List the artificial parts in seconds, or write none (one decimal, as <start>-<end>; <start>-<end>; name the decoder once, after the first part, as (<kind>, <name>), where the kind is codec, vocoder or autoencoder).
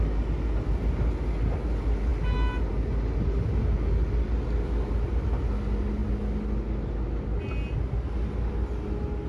none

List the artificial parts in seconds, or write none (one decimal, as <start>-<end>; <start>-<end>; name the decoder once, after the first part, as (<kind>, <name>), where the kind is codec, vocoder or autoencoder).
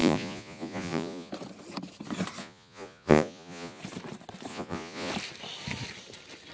0.0-1.3 (vocoder, Vocos); 2.4-3.8; 4.5-5.1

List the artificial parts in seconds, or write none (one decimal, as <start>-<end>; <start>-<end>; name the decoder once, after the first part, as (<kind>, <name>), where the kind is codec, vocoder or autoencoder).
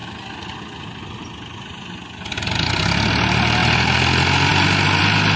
none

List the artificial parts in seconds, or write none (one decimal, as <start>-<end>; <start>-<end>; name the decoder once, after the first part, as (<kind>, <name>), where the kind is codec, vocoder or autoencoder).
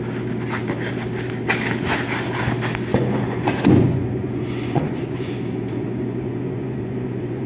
2.9-7.5 (vocoder, Vocos)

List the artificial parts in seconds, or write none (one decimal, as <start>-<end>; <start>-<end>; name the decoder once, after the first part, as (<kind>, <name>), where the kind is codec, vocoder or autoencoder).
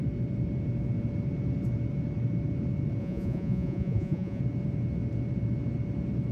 3.0-4.4 (vocoder, Vocos)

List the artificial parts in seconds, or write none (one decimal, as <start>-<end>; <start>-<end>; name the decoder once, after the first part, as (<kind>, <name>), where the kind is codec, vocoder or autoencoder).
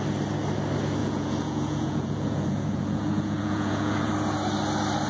1.0-4.1 (vocoder, Vocos)